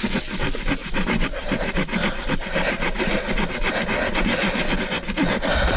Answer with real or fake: real